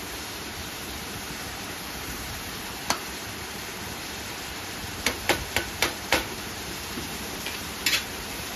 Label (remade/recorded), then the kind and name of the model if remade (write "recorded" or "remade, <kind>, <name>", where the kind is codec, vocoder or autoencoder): remade, vocoder, BigVGAN v2